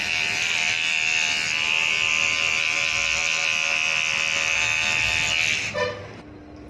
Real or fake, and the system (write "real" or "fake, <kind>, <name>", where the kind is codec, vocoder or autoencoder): real